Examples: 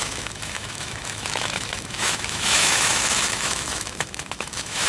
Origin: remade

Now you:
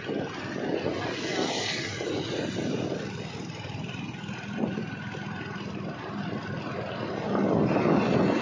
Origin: recorded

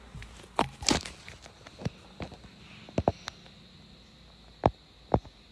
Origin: recorded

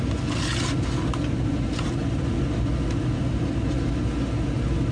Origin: recorded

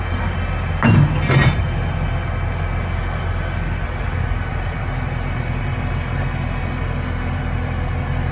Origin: recorded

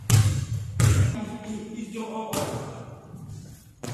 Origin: recorded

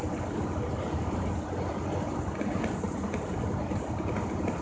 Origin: recorded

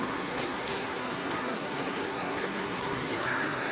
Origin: remade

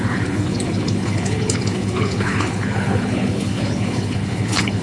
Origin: remade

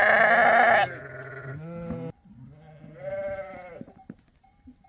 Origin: recorded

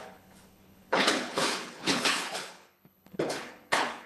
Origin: remade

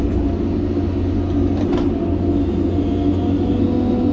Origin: recorded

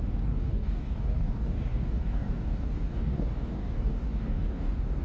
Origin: remade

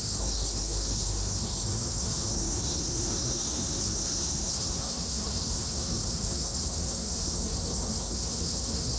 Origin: remade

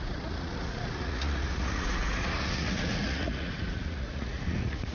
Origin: remade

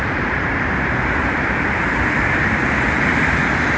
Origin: remade